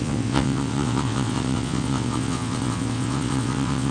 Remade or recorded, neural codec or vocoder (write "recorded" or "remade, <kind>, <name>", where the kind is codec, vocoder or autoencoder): remade, vocoder, WaveNeXt